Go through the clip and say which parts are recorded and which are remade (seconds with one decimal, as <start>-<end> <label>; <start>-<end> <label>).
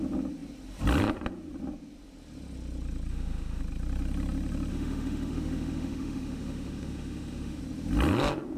0.0-3.1 recorded; 3.1-3.6 remade; 3.6-4.7 recorded; 4.7-7.6 remade; 7.6-8.6 recorded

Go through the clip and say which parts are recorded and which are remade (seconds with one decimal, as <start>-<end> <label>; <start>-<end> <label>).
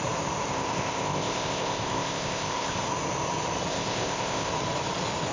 0.0-0.5 recorded; 0.5-2.8 remade; 2.8-3.7 recorded; 3.7-4.5 remade; 4.5-5.3 recorded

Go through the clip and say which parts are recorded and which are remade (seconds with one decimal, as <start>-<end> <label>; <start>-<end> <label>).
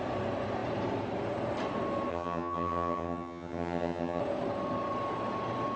0.0-2.1 recorded; 2.1-4.2 remade; 4.2-5.8 recorded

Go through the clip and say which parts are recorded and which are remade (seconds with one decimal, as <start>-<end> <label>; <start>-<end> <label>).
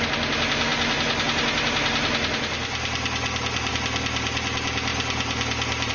0.0-5.9 recorded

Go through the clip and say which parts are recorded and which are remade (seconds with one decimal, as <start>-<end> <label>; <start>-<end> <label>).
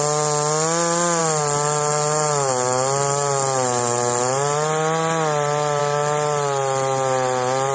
0.0-7.7 recorded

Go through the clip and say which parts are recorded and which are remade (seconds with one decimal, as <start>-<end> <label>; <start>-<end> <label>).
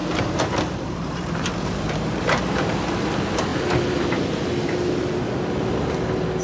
0.0-2.4 remade; 2.4-3.5 recorded; 3.5-5.2 remade; 5.2-6.4 recorded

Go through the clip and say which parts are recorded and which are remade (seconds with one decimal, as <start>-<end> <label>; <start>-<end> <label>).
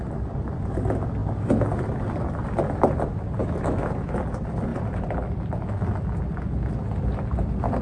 0.0-3.4 recorded; 3.4-3.9 remade; 3.9-7.8 recorded